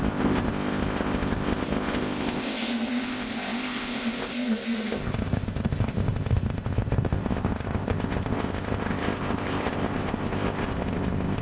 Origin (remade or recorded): remade